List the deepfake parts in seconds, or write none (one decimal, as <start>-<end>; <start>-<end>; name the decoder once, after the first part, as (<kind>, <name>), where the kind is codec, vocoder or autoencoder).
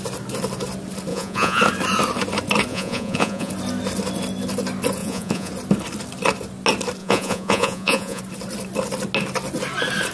1.1-1.6 (vocoder, Vocos); 2.7-3.5; 5.0-5.5; 7.0-8.2